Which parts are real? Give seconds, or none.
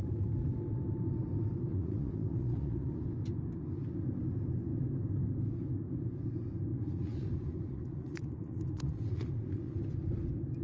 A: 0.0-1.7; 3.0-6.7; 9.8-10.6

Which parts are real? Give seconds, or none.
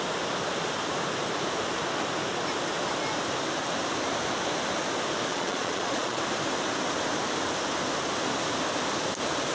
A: 0.0-5.3; 6.2-9.5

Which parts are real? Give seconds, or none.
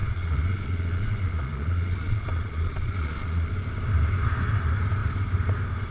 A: 3.5-5.9